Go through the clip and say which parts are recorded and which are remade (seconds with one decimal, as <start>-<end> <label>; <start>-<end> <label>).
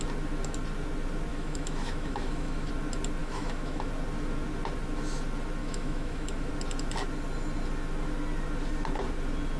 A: 0.0-1.3 recorded; 1.3-2.7 remade; 2.7-3.2 recorded; 3.2-3.9 remade; 3.9-5.6 recorded; 5.6-6.5 remade; 6.5-9.6 recorded